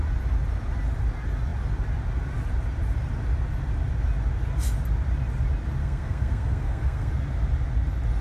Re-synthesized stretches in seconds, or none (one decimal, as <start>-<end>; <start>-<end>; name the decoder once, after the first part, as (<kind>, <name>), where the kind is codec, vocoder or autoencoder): 5.8-7.1 (codec, SNAC)